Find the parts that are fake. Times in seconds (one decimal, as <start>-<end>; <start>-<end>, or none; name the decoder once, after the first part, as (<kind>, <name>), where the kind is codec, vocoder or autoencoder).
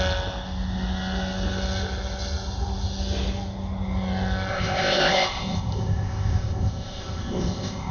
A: 4.5-7.9 (codec, ZipCodec)